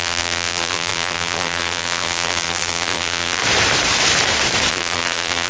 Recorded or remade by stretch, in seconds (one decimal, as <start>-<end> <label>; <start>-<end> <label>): 0.0-3.4 remade; 3.4-4.7 recorded; 4.7-5.5 remade